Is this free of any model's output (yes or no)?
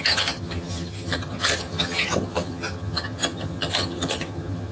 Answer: no